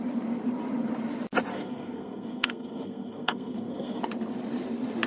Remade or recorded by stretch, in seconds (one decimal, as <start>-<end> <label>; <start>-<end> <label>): 0.0-1.5 recorded; 1.5-4.0 remade; 4.0-5.1 recorded